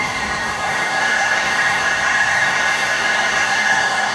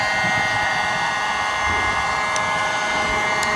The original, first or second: second